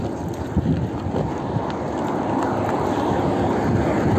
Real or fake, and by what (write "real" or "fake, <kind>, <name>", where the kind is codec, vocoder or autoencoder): real